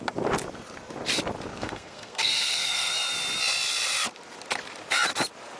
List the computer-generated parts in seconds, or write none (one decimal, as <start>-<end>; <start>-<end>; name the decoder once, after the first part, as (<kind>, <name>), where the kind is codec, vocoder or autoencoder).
1.6-2.9 (codec, SNAC)